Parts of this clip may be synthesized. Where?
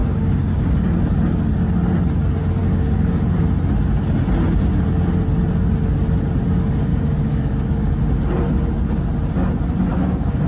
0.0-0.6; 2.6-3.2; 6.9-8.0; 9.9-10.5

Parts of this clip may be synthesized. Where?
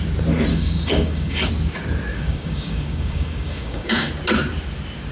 0.5-1.5; 2.1-4.1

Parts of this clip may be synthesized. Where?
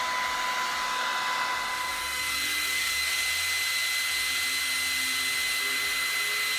1.9-3.2